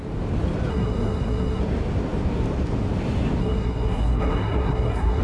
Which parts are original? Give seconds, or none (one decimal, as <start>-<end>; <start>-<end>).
0.0-0.7; 1.6-3.4

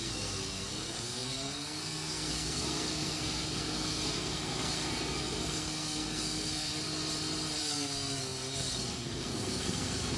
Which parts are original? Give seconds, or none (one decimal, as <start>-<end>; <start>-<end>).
6.7-7.6

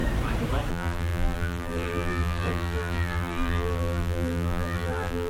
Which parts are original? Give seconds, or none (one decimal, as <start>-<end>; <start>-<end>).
0.0-0.7

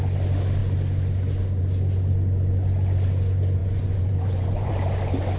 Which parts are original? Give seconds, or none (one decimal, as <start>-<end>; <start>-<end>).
0.0-3.6; 4.7-5.4